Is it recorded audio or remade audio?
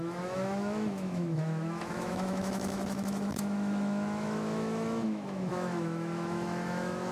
remade